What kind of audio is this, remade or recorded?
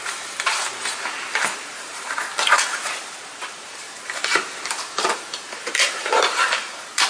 remade